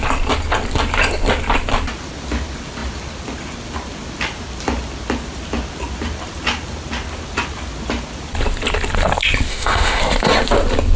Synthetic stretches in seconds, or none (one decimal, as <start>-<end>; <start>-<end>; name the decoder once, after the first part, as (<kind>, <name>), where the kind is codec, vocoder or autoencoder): 9.5-10.0 (autoencoder, DAC-VAE)